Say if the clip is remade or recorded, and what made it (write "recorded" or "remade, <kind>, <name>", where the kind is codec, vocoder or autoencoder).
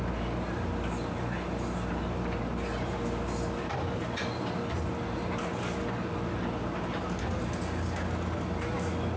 recorded